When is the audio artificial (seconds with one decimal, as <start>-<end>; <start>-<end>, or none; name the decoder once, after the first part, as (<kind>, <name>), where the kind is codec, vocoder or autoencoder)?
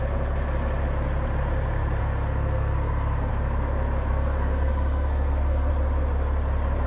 2.0-3.3 (codec, SNAC); 4.1-5.7